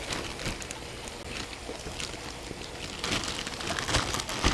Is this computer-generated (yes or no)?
no